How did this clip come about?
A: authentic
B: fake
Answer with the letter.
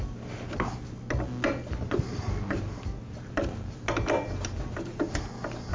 A